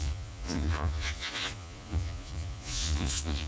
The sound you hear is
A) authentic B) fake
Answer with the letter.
B